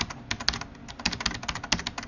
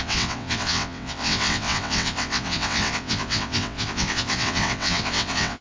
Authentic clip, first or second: first